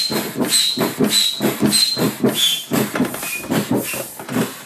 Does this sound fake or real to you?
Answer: real